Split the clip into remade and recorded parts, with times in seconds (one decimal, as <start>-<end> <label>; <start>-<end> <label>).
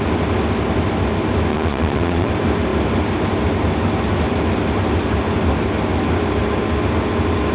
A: 0.0-1.5 recorded; 1.5-2.3 remade; 2.3-7.5 recorded